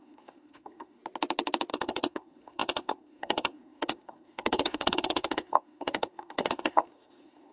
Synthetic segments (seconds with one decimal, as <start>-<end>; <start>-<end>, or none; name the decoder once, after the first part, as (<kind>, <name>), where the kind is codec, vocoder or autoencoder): 0.0-1.0 (codec, SNAC); 1.7-7.5

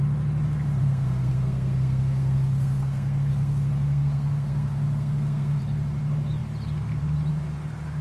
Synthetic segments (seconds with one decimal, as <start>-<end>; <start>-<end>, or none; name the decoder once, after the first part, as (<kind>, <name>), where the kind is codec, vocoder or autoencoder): 0.8-5.6 (codec, SNAC)